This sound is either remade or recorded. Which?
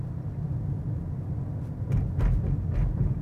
recorded